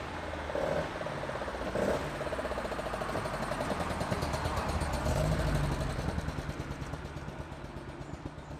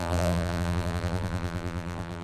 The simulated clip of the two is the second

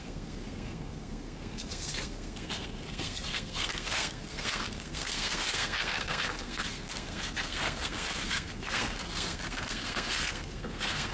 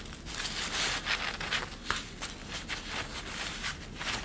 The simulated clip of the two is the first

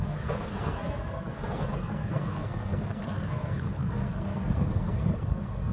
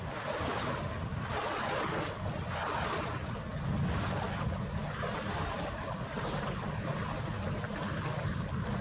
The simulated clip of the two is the first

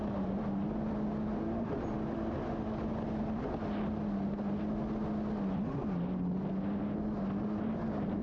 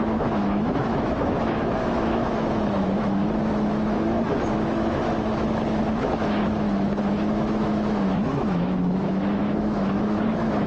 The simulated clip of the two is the second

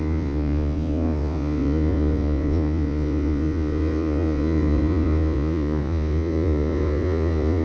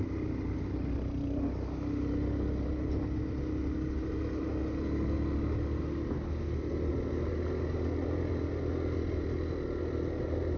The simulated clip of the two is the first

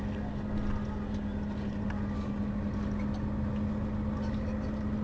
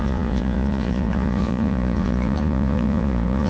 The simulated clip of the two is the second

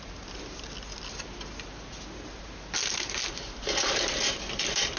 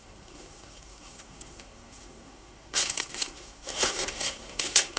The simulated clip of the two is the second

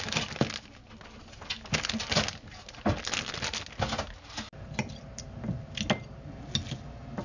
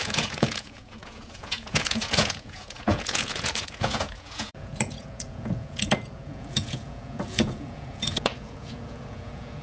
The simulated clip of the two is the second